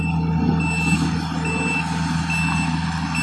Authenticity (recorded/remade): recorded